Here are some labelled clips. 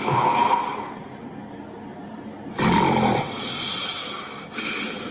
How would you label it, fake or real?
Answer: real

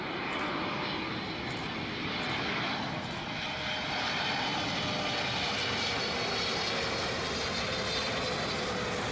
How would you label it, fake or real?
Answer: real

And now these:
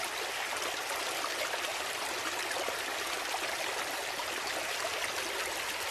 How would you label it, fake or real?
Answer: real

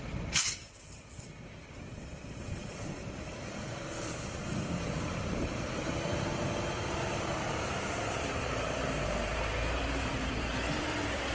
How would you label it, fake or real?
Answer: fake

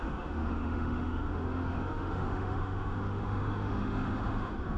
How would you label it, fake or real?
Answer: fake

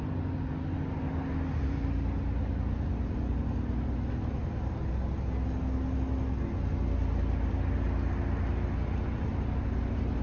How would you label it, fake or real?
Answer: real